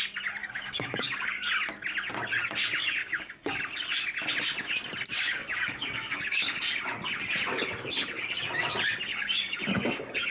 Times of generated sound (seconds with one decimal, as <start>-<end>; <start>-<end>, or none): 0.4-1.5; 3.0-3.6; 5.4-6.6; 9.1-10.3